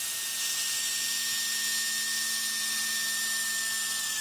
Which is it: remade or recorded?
recorded